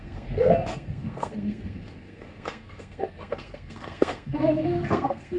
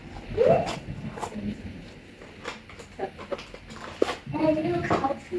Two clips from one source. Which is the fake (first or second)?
first